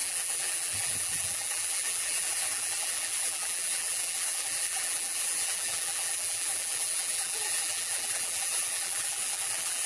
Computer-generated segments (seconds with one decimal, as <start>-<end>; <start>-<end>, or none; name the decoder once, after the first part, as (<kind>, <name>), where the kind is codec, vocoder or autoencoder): 0.0-9.9 (vocoder, BigVGAN v2)